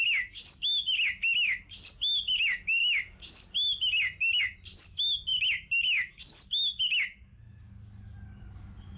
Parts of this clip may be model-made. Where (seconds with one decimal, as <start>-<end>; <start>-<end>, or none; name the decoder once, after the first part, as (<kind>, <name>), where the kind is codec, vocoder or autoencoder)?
none